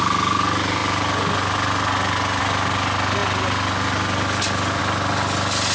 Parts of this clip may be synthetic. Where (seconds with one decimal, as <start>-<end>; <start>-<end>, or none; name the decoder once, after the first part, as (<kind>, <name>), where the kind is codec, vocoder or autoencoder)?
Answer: none